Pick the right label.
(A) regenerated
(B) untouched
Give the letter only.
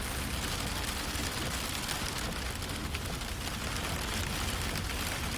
B